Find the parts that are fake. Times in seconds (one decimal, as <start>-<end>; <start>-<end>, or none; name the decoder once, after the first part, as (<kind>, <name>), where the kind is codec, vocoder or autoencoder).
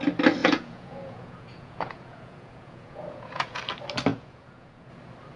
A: 0.4-3.6 (vocoder, Vocos); 4.1-4.9